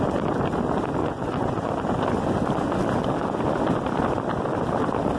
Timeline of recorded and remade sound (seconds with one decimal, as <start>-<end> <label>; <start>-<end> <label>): 0.0-1.0 recorded; 1.0-1.7 remade; 1.7-5.2 recorded